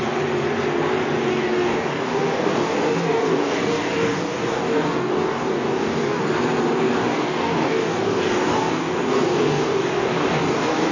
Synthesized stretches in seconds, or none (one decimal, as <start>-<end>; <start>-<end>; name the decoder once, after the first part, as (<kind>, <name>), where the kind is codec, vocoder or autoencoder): 1.3-6.2 (codec, DAC); 6.8-10.9